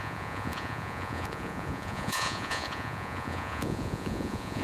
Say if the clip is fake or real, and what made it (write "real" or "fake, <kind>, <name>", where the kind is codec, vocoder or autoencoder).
fake, vocoder, Vocos